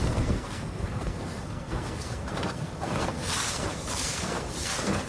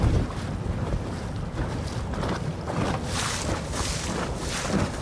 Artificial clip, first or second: first